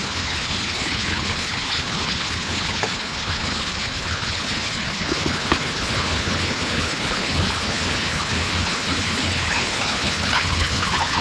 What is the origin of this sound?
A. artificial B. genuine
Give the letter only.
A